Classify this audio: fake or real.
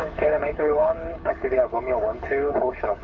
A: fake